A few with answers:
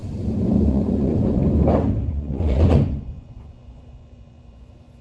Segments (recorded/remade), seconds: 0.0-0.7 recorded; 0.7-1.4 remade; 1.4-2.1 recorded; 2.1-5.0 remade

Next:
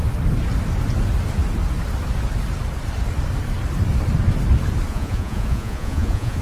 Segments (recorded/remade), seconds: 0.0-4.9 recorded; 4.9-6.4 remade

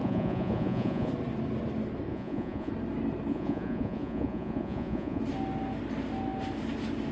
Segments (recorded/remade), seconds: 0.0-1.1 remade; 1.1-2.1 recorded; 2.1-2.7 remade; 2.7-3.3 recorded; 3.3-5.2 remade; 5.2-7.1 recorded

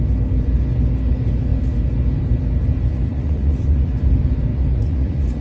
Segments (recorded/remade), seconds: 0.0-2.9 recorded; 2.9-3.9 remade; 3.9-4.5 recorded; 4.5-5.4 remade

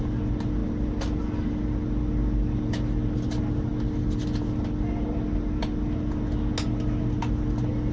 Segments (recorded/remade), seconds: 0.0-7.9 recorded

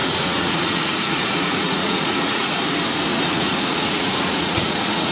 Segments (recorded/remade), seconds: 0.0-2.5 remade; 2.5-3.1 recorded; 3.1-5.1 remade

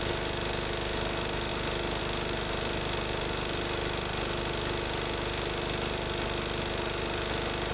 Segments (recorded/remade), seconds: 0.0-7.7 recorded